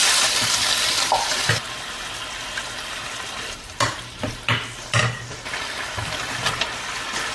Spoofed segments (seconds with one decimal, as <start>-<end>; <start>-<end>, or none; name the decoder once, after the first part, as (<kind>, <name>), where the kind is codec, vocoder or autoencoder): 0.0-7.3 (vocoder, BigVGAN v2)